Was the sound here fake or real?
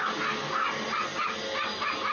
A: real